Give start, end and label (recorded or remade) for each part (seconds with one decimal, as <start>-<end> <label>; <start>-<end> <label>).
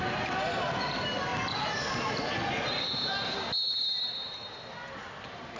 0.0-5.6 recorded